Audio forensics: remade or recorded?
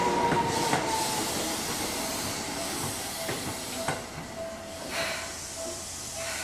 remade